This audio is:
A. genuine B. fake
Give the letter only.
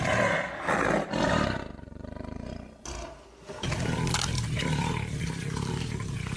A